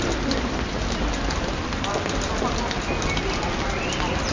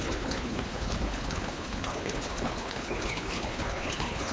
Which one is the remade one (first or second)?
second